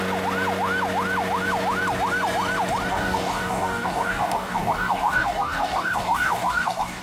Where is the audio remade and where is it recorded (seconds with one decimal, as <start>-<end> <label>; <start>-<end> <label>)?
0.0-2.9 recorded; 2.9-7.0 remade